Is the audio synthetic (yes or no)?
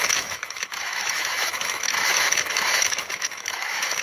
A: yes